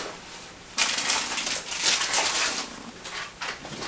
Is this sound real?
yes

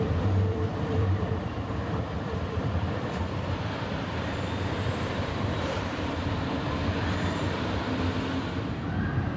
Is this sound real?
no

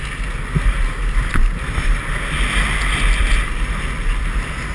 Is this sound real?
yes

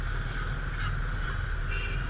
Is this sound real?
yes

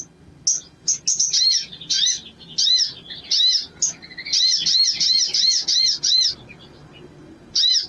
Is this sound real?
yes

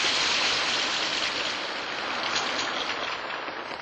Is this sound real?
yes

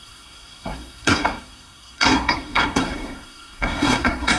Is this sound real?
no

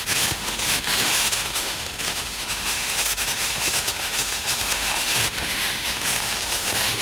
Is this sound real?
no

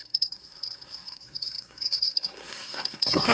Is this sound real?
no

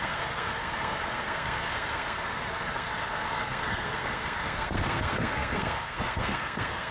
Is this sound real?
no